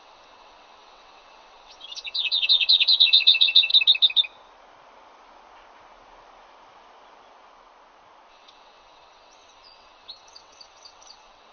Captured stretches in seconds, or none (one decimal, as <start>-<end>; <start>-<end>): 3.7-8.3